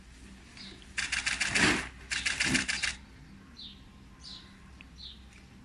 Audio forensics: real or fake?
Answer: real